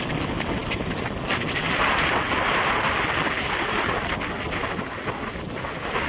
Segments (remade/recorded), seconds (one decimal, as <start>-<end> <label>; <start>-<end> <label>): 0.0-6.1 recorded